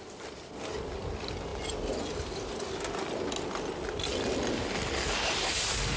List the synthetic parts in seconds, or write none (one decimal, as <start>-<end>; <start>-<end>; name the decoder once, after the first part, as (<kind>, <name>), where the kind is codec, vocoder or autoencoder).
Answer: none